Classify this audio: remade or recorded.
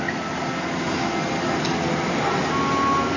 recorded